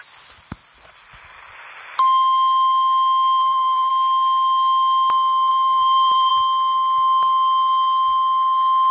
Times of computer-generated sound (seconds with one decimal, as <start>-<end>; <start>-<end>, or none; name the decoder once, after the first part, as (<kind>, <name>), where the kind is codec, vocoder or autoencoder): 3.4-3.9 (vocoder, BigVGAN v2); 5.5-6.3